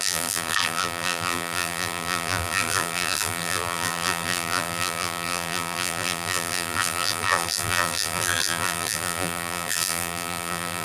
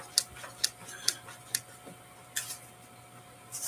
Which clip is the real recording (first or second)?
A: second